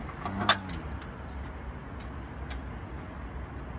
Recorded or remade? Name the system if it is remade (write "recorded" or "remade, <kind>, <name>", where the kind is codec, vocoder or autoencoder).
recorded